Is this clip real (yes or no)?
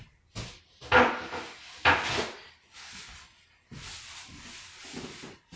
yes